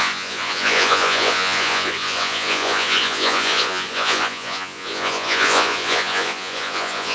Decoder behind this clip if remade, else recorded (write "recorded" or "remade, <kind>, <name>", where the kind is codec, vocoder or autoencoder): remade, vocoder, Vocos